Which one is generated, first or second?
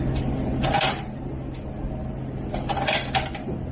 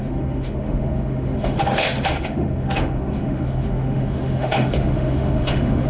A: second